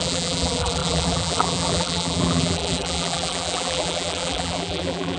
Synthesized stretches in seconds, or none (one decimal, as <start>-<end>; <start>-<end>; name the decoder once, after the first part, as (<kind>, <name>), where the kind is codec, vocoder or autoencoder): 0.0-5.2 (vocoder, BigVGAN v2)